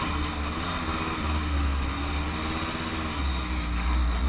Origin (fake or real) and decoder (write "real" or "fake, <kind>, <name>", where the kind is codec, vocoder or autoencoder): real